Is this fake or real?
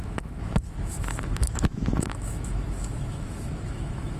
fake